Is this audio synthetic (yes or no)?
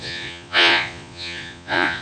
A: yes